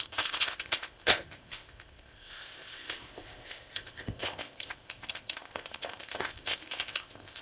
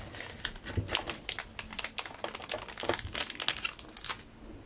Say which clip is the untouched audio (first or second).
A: second